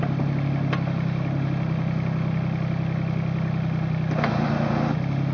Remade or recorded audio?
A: recorded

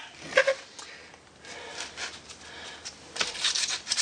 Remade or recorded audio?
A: recorded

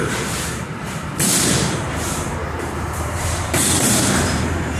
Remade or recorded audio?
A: remade